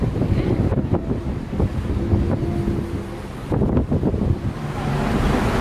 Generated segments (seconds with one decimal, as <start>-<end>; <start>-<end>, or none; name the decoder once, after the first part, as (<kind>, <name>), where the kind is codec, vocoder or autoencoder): 0.0-1.0 (vocoder, BigVGAN v2); 4.4-5.6